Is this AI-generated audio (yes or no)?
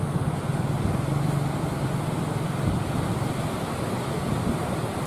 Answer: no